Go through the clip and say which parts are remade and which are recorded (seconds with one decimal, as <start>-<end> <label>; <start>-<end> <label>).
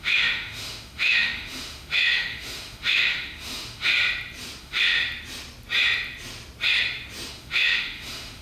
0.0-3.9 remade; 3.9-4.6 recorded; 4.6-5.0 remade; 5.0-7.3 recorded; 7.3-8.4 remade